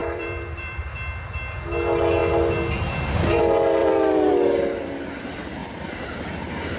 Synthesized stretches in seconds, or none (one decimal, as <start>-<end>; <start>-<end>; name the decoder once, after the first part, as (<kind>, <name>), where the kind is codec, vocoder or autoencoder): 0.0-0.8 (vocoder, BigVGAN v2); 3.8-4.3; 5.6-6.2